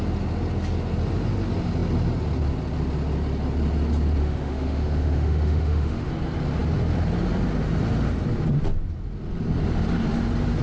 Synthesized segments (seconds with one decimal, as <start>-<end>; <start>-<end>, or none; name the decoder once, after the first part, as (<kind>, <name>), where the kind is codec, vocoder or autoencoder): 4.2-6.1 (autoencoder, DAC-VAE)